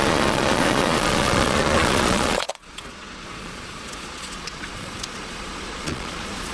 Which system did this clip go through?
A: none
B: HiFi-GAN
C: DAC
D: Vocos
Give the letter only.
D